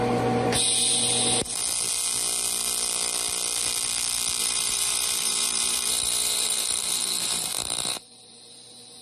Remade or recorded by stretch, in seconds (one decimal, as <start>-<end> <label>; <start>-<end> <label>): 0.0-4.4 recorded; 4.4-9.0 remade